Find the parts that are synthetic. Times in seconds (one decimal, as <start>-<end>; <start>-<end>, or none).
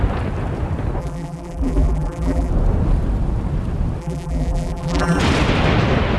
1.0-2.5; 4.0-5.2